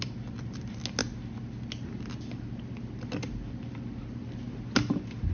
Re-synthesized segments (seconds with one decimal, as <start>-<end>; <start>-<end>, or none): none